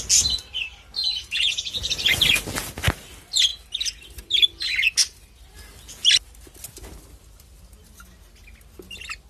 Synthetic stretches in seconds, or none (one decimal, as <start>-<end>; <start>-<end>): 1.0-1.9